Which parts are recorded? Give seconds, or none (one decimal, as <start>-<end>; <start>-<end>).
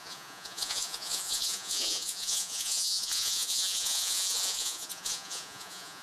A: none